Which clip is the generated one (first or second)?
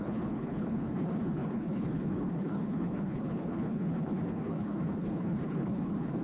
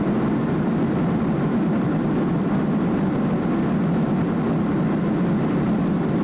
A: first